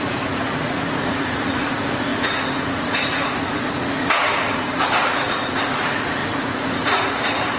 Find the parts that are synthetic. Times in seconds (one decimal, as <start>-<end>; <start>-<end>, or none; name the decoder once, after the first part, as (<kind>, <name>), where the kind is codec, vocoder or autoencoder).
0.0-7.6 (vocoder, Vocos)

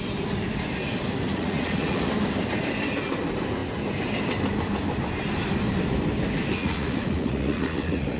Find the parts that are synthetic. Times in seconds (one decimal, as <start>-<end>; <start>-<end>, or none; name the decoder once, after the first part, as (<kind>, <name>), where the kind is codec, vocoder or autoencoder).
1.3-2.1 (vocoder, Vocos); 6.6-8.2

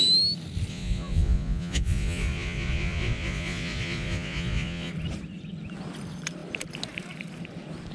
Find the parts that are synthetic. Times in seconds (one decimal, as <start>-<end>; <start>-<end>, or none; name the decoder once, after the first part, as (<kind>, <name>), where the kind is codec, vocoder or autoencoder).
0.7-4.9 (vocoder, Vocos)

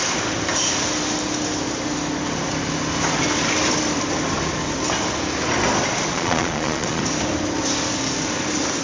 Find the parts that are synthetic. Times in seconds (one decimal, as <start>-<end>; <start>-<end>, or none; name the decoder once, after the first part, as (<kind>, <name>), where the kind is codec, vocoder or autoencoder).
6.1-7.0 (vocoder, Vocos)